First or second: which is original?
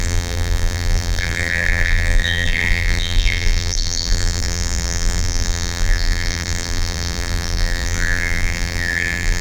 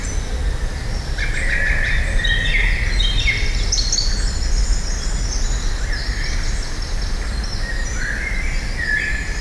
second